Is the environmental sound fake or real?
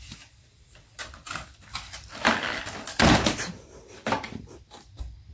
fake